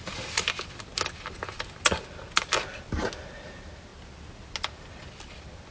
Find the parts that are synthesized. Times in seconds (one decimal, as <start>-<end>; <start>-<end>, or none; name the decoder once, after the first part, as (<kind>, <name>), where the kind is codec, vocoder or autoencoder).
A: none